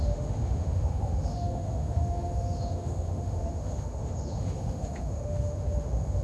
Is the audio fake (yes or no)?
yes